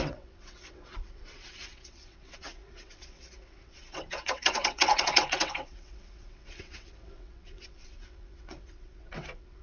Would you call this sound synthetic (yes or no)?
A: yes